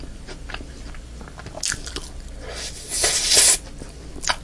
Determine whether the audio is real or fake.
real